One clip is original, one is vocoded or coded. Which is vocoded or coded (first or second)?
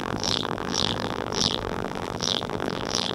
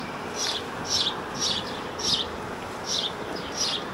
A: first